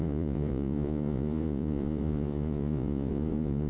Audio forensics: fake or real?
fake